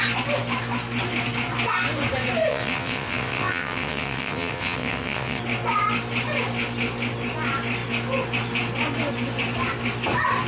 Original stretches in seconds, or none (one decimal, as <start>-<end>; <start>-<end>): 0.0-2.5; 5.4-10.5